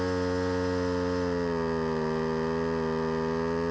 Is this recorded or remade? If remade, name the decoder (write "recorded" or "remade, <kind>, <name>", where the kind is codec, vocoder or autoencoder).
recorded